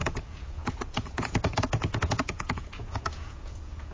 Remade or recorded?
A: remade